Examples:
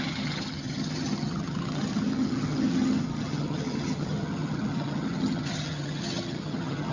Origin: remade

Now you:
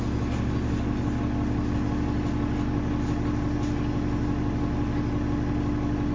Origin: recorded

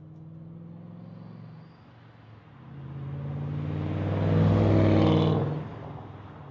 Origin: recorded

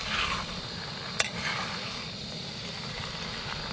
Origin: recorded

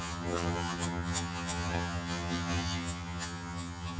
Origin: remade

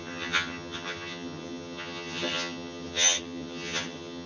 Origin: remade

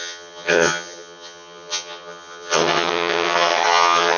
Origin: remade